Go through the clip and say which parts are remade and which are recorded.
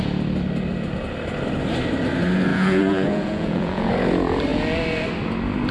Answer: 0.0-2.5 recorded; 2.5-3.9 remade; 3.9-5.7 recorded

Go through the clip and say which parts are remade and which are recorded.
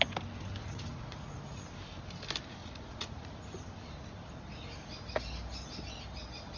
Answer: 0.0-0.6 recorded; 0.6-1.6 remade; 1.6-2.6 recorded; 2.6-3.4 remade; 3.4-6.6 recorded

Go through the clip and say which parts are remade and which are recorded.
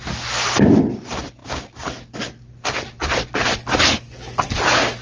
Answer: 0.0-5.0 recorded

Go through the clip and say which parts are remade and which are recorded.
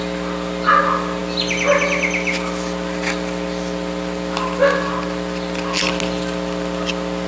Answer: 0.0-7.3 recorded